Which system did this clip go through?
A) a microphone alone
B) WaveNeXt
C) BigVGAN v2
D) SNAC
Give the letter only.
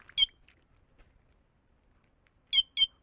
A